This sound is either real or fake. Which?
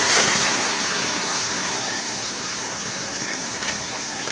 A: fake